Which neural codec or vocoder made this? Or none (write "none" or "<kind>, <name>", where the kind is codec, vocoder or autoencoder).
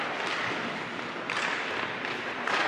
none